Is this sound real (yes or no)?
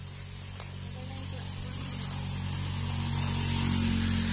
yes